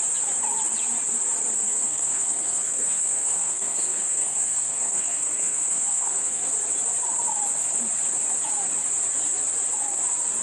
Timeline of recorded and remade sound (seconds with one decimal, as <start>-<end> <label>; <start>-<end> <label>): 0.0-1.6 recorded; 1.6-6.5 remade; 6.5-10.4 recorded